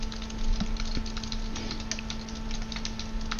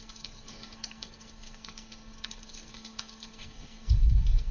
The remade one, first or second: second